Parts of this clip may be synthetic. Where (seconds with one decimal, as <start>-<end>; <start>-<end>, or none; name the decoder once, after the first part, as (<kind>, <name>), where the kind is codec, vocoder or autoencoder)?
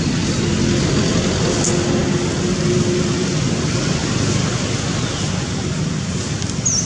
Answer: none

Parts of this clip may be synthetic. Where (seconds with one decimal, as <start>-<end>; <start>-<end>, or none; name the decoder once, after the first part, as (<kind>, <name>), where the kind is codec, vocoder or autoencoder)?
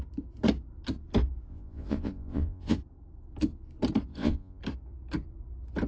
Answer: 1.5-2.8 (vocoder, Vocos); 4.1-4.6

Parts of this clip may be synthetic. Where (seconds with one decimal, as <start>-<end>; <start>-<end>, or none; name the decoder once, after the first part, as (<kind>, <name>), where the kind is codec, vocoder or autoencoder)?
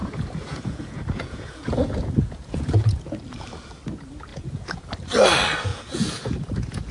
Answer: 0.0-3.0 (vocoder, Vocos); 4.3-4.9; 5.7-6.9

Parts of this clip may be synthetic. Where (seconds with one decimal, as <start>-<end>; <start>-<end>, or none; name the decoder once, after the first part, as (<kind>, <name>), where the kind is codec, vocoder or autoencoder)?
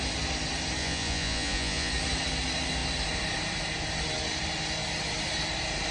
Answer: 0.8-1.9 (vocoder, Vocos)